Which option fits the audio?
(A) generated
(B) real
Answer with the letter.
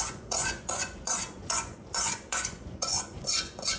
A